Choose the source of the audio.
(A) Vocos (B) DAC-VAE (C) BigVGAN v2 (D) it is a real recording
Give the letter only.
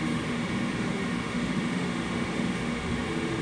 B